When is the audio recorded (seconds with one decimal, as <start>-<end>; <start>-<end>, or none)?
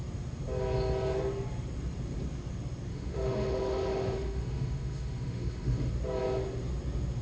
0.0-2.9; 5.9-7.2